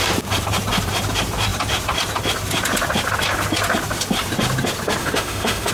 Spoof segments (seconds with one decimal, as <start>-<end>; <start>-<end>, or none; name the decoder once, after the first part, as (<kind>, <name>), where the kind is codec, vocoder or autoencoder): 5.0-5.7 (autoencoder, DAC-VAE)